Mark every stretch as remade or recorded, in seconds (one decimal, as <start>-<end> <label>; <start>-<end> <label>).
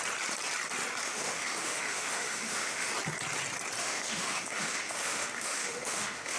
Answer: 0.0-1.0 recorded; 1.0-2.9 remade; 2.9-3.8 recorded; 3.8-6.4 remade